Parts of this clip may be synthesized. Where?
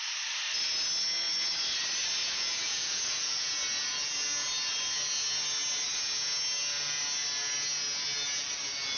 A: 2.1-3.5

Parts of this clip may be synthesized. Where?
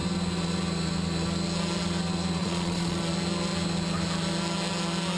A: 2.4-3.0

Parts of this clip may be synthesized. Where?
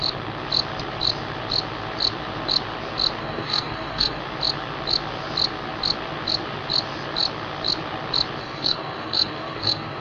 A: 3.2-4.2; 8.4-10.0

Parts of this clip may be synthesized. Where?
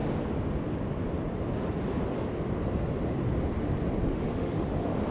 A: 4.1-5.1